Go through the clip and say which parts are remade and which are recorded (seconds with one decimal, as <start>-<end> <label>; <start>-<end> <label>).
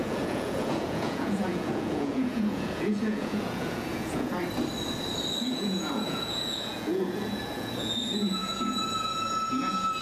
0.0-4.3 remade; 4.3-5.4 recorded; 5.4-10.0 remade